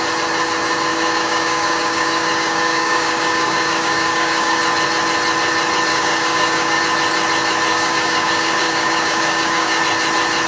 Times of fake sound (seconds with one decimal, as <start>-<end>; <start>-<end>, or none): 0.9-4.6; 5.9-6.8; 7.7-9.8